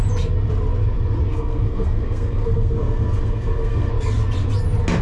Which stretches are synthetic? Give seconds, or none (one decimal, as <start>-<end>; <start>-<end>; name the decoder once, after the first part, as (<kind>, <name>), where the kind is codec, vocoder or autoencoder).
1.3-3.9 (codec, SNAC)